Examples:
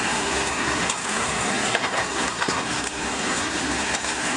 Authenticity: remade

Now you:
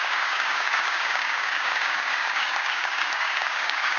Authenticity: remade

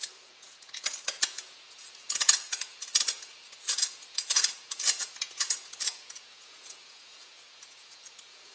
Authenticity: remade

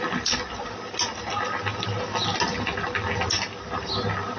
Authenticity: recorded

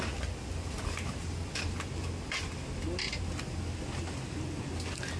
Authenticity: recorded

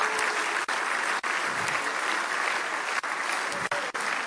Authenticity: recorded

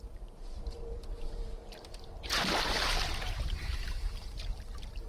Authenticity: remade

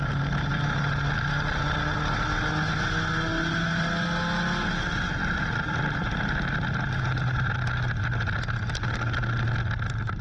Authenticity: recorded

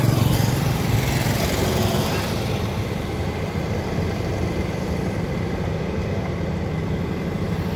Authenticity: remade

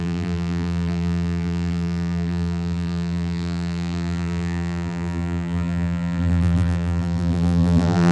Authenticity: remade